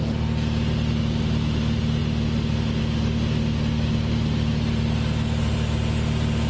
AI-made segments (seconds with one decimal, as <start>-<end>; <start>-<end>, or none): none